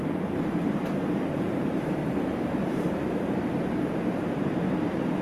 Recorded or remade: remade